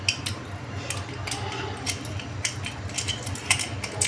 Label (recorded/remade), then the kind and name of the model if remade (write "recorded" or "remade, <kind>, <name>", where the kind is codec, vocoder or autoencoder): recorded